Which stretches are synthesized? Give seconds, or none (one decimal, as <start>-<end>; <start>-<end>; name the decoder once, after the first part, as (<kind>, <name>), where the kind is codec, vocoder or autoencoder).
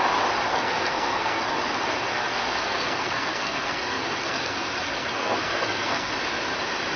0.5-1.5 (codec, SNAC); 2.1-6.1